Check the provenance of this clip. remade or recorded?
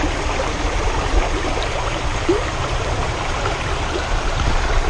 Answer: remade